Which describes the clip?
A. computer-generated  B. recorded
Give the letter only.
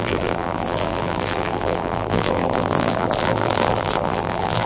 A